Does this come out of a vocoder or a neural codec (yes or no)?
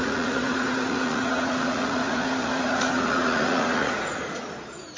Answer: yes